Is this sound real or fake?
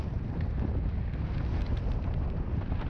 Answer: real